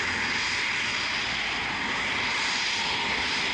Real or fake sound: real